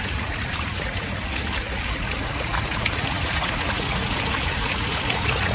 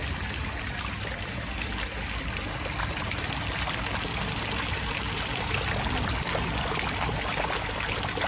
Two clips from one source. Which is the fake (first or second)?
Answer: first